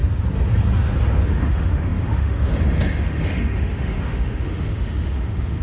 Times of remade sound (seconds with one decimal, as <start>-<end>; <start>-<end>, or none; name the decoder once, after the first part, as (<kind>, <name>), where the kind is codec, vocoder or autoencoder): 1.3-5.6 (autoencoder, DAC-VAE)